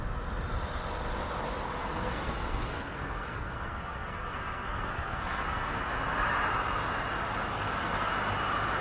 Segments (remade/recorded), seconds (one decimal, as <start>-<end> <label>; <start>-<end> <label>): 0.0-1.8 recorded; 1.8-5.8 remade; 5.8-7.5 recorded; 7.5-8.1 remade; 8.1-8.8 recorded